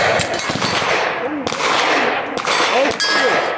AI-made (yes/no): no